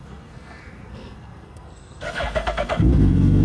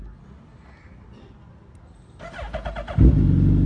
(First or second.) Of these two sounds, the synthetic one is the first